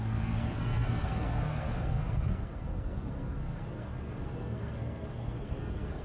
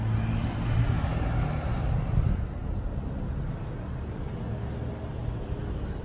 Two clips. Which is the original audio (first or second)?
second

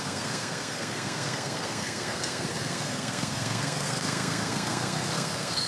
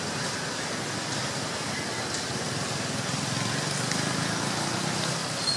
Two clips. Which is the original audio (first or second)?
second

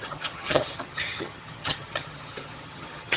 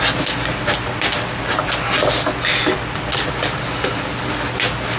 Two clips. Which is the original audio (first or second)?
second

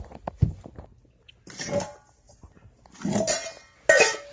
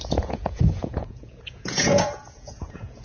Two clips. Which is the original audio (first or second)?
first